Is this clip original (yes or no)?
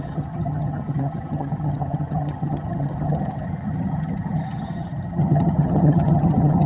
no